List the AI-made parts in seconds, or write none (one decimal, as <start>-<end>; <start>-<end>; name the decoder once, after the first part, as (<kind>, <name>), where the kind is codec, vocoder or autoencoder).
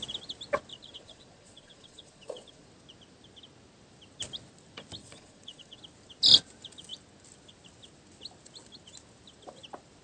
0.7-2.7 (vocoder, Vocos); 5.0-5.8